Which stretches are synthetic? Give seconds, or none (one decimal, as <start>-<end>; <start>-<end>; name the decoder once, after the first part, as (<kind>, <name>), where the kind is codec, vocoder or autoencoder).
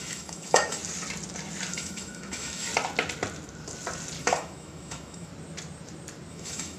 0.0-0.8 (autoencoder, DAC-VAE); 1.7-2.7; 4.2-5.3; 6.3-6.8